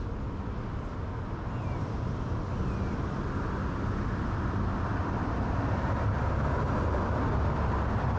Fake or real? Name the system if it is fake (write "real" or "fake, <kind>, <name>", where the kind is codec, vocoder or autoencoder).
real